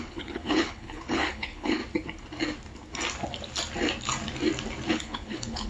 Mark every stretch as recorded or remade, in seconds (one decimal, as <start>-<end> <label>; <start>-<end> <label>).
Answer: 0.0-1.8 remade; 1.8-4.9 recorded; 4.9-5.7 remade

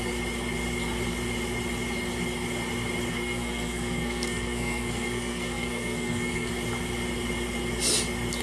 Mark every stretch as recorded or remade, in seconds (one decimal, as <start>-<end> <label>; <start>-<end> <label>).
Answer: 0.0-3.1 recorded; 3.1-6.5 remade; 6.5-8.4 recorded

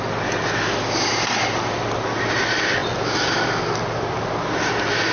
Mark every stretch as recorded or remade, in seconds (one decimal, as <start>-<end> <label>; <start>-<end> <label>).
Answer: 0.0-5.1 recorded

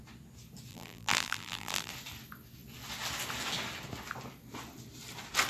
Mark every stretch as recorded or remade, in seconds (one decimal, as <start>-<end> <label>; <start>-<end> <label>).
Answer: 0.0-0.7 recorded; 0.7-1.9 remade; 1.9-5.5 recorded

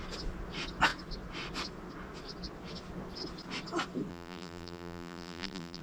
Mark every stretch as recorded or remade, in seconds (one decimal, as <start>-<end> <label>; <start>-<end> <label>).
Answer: 0.0-4.1 recorded; 4.1-5.8 remade

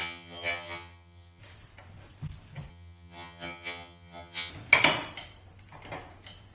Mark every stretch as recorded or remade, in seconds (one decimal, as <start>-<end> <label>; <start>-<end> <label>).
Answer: 0.0-1.4 remade; 1.4-2.7 recorded; 2.7-4.5 remade; 4.5-6.5 recorded

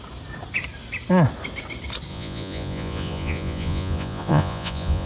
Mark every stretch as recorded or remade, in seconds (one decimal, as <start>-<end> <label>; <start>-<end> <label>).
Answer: 0.0-2.1 recorded; 2.1-5.1 remade